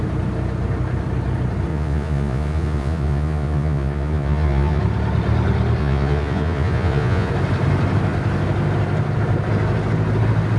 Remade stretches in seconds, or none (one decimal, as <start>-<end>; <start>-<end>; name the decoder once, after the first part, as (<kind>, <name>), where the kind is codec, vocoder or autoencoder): 1.7-4.8 (vocoder, Vocos); 5.8-7.3